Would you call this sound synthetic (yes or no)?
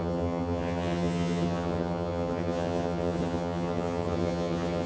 yes